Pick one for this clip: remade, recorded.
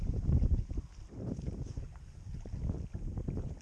recorded